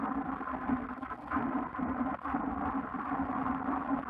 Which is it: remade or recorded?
recorded